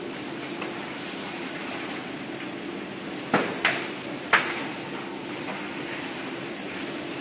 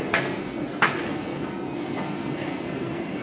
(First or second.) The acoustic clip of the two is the first